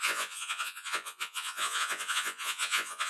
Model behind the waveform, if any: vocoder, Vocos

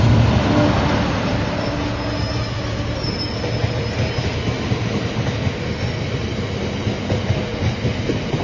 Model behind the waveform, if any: none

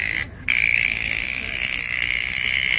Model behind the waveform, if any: none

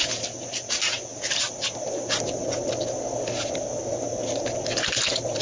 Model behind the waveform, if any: none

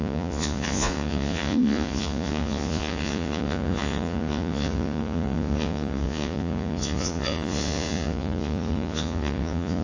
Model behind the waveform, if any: vocoder, Vocos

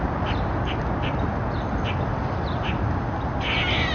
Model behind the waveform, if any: none